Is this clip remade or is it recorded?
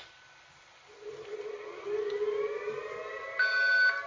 recorded